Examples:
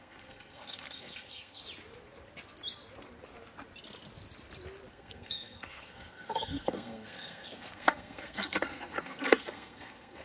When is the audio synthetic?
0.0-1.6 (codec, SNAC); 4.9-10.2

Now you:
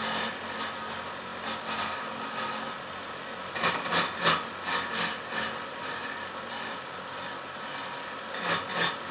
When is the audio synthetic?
none